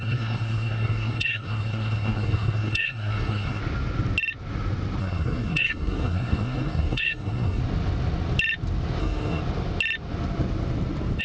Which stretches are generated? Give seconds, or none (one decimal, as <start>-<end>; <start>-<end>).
0.0-3.6; 5.0-7.6; 9.0-9.4